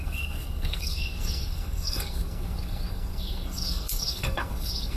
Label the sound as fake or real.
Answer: fake